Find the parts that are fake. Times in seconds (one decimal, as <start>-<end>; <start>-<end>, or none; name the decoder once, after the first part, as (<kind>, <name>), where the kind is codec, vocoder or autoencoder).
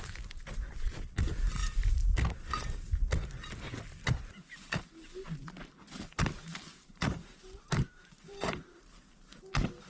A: 1.6-3.0 (vocoder, BigVGAN v2); 6.7-9.5